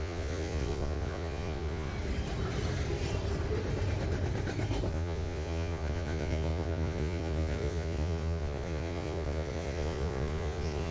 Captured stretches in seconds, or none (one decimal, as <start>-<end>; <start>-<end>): 1.9-4.9